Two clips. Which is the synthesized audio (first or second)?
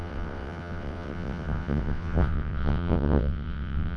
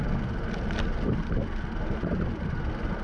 first